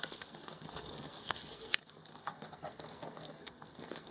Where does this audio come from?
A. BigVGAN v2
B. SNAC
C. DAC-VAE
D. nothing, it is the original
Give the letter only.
B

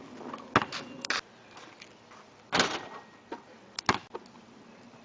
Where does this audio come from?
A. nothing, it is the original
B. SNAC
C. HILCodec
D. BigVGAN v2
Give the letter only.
A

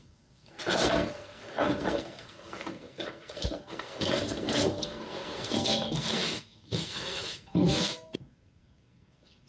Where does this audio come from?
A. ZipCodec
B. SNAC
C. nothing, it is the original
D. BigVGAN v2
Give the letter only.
B